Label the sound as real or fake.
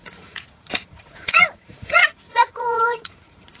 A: fake